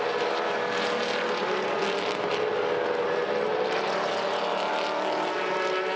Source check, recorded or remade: recorded